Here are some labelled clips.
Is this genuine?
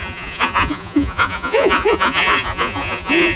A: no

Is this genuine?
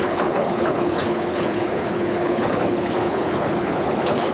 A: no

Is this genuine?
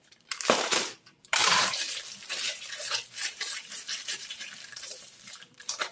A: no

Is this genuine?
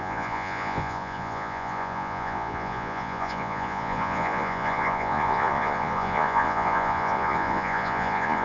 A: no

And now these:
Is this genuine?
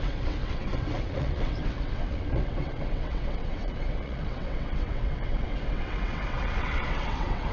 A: no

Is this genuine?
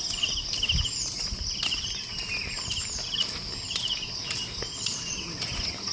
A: yes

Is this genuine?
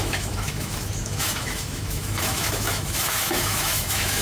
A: no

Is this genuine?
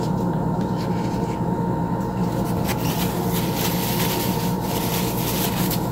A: yes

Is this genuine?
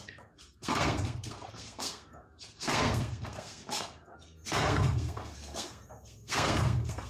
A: no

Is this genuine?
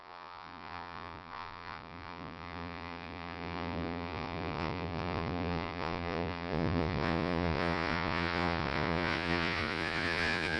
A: no